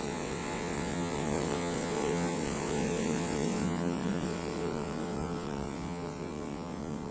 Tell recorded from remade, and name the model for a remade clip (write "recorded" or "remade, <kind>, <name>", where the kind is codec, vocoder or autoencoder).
remade, vocoder, WaveNeXt